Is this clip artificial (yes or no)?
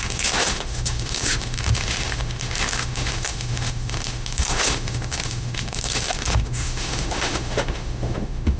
yes